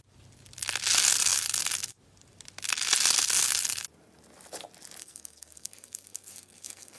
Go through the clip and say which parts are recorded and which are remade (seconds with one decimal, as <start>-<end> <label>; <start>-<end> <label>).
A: 0.0-5.0 recorded; 5.0-7.0 remade